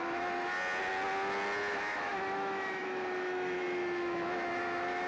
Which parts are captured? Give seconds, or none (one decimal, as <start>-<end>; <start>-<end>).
0.5-1.7